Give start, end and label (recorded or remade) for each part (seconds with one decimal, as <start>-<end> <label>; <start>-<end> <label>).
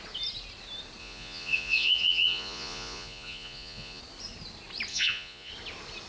0.0-1.0 recorded; 1.0-4.0 remade; 4.0-4.9 recorded; 4.9-5.5 remade; 5.5-6.1 recorded